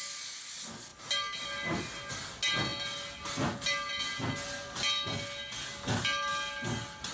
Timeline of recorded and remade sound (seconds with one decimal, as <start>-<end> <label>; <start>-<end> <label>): 0.0-7.1 recorded